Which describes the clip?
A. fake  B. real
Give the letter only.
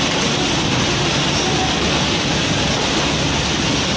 B